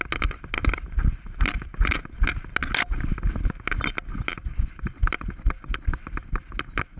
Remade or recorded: recorded